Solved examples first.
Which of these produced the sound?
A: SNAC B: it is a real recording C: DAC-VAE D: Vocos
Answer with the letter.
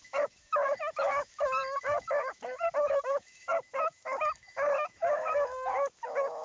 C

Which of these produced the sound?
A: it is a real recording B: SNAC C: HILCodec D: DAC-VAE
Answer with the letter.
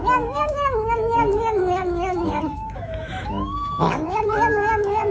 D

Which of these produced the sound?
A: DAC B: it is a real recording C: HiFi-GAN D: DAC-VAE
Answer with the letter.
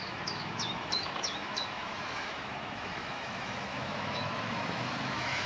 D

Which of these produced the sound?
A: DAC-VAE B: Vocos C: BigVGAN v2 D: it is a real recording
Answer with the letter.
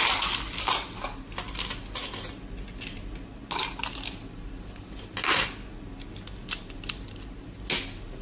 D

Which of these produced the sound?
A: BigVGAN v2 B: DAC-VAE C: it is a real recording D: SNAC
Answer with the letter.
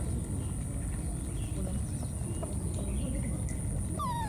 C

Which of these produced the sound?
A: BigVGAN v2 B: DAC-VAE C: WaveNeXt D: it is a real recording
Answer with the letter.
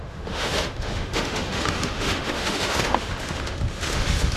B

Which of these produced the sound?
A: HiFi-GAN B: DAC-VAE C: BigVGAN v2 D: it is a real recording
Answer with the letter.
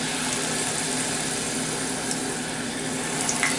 D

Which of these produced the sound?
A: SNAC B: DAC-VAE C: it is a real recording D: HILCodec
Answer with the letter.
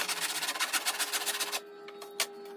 C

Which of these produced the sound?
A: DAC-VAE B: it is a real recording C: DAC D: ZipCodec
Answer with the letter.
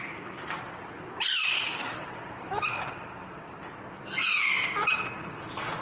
B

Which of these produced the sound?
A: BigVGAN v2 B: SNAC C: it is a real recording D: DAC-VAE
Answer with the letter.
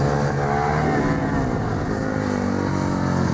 C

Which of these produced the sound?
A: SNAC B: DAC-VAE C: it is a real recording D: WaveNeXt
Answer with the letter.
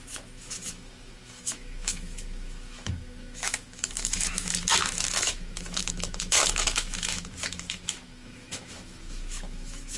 B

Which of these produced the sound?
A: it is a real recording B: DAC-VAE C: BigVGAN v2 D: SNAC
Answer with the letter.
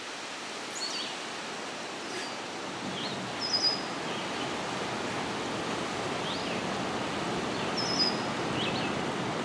A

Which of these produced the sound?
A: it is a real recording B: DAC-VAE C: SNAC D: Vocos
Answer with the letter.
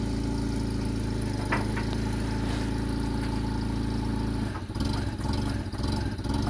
A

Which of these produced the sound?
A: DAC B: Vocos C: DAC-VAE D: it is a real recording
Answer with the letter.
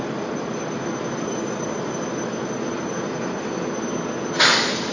D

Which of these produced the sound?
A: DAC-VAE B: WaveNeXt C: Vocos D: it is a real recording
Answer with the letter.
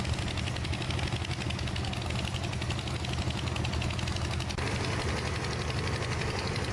D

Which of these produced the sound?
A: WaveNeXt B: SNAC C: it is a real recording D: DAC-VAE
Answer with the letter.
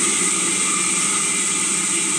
C